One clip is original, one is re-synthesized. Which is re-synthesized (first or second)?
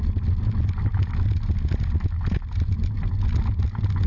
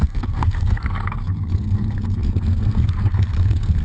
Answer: second